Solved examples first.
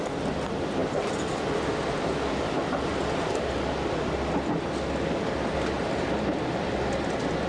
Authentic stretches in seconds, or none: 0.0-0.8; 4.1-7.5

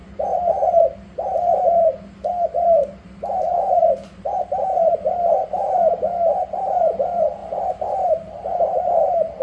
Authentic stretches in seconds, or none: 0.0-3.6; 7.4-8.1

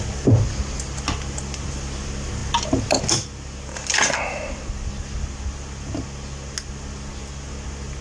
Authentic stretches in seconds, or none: 0.0-8.0

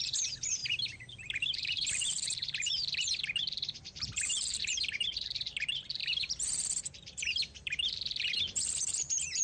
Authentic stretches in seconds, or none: none

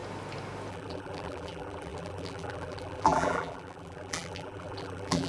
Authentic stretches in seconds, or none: 0.0-0.7

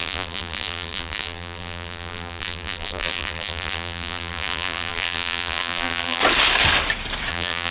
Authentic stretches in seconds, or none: 6.2-7.3

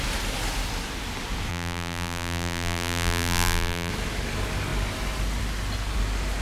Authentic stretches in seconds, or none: 0.0-1.5; 3.9-6.4

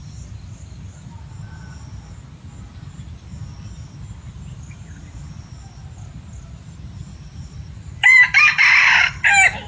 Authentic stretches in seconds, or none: 0.0-7.1